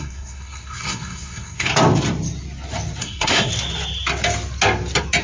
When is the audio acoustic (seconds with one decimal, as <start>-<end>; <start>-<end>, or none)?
1.7-3.0; 3.5-5.2